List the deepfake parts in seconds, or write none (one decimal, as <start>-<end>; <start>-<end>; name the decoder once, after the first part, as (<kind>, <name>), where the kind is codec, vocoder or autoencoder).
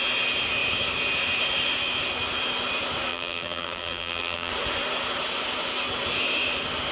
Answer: 3.1-4.5 (vocoder, BigVGAN v2)